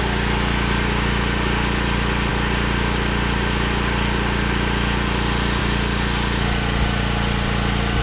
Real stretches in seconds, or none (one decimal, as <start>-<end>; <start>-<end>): 0.0-8.0